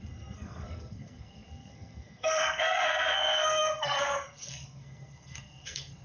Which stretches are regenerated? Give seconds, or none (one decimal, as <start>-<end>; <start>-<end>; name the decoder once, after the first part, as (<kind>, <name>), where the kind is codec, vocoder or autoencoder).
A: 0.0-6.0 (codec, SNAC)